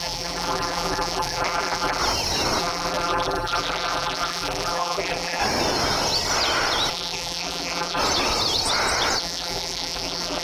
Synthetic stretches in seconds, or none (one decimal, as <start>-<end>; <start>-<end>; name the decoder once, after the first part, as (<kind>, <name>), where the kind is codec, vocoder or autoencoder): 0.0-2.0 (vocoder, BigVGAN v2); 2.6-5.4; 6.9-8.0; 9.2-10.4